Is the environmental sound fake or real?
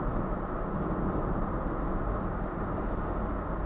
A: real